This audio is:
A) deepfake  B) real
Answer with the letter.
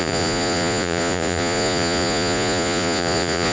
A